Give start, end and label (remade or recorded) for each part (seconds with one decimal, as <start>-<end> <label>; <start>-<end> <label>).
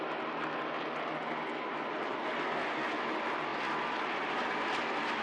0.0-5.2 recorded